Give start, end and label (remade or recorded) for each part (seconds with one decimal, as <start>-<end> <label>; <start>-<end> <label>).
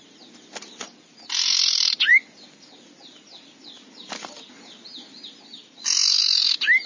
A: 0.0-6.9 recorded